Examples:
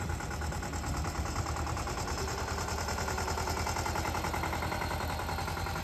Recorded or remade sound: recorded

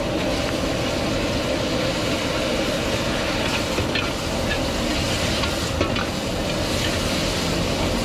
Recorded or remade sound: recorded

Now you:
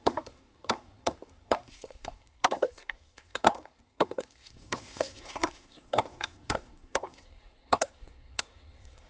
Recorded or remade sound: remade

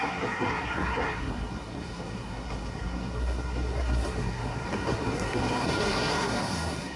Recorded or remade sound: remade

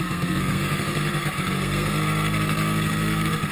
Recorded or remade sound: remade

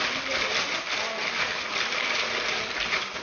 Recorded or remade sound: recorded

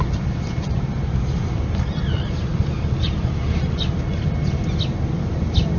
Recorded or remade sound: recorded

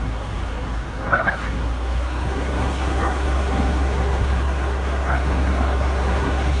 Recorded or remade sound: remade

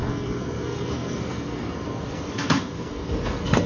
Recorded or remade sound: remade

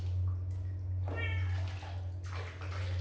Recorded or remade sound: recorded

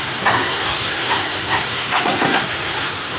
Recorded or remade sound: remade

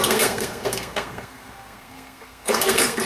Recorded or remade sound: remade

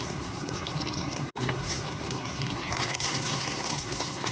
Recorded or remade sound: remade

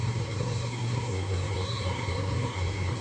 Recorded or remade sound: remade